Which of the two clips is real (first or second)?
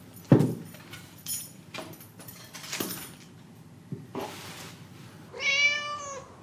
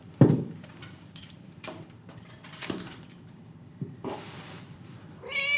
first